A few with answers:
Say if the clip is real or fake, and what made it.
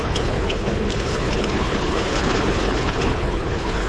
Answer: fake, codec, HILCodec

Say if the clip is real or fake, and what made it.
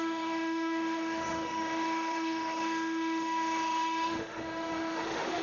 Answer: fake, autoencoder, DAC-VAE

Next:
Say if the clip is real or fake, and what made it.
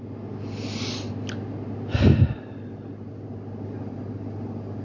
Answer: real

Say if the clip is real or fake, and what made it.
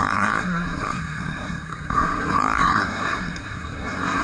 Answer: fake, codec, SNAC